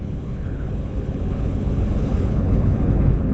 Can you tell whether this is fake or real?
fake